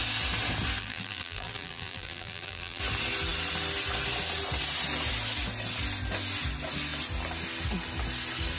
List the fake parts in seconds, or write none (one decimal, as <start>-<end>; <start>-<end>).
0.8-2.8